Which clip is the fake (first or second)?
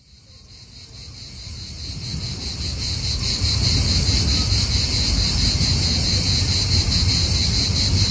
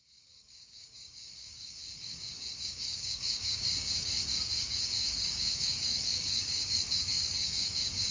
second